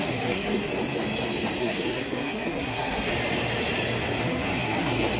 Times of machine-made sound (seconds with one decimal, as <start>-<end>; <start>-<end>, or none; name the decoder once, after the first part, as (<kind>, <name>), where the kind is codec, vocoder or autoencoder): 0.0-0.7 (codec, SNAC); 1.6-3.1; 4.2-5.2